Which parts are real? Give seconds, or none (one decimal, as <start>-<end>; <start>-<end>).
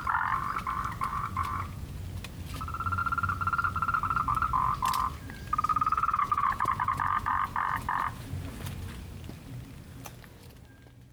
0.0-1.1; 2.0-5.7; 7.3-11.1